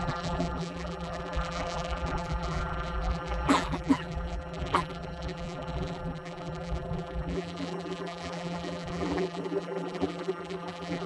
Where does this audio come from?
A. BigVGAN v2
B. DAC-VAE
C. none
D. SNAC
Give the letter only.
A